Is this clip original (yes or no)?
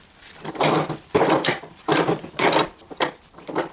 no